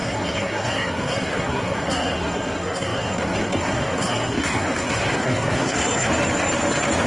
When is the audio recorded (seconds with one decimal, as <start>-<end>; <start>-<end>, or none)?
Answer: 6.1-7.1